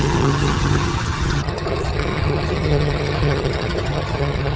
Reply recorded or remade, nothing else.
remade